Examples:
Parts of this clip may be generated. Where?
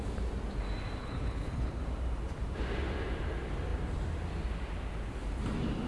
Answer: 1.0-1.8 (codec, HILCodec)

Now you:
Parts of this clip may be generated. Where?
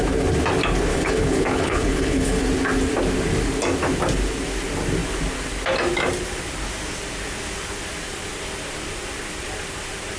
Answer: 0.9-2.4 (codec, HILCodec)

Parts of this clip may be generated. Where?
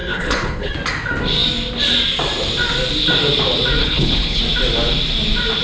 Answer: 0.0-0.7 (codec, HILCodec); 3.8-4.4